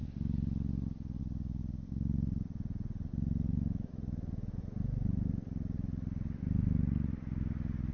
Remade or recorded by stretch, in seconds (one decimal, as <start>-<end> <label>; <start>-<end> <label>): 0.0-1.2 remade; 1.2-7.9 recorded